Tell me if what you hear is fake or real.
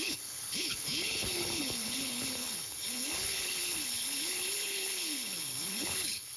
fake